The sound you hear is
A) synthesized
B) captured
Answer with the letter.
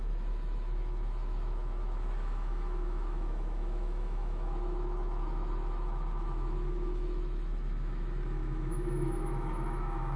A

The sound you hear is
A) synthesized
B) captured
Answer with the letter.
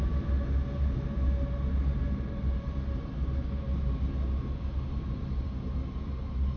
B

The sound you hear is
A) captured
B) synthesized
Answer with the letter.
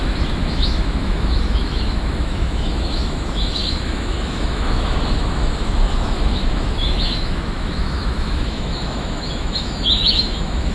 B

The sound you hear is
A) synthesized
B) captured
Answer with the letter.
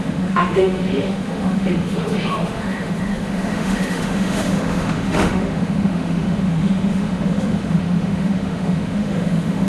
A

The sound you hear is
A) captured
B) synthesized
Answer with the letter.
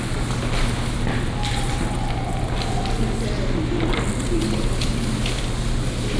A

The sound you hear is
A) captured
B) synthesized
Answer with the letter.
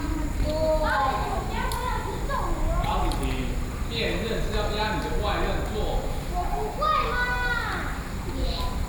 A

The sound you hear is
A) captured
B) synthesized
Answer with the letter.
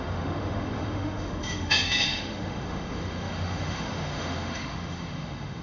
B